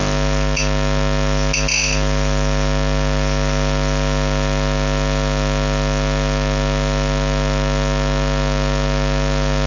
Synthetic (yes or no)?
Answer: no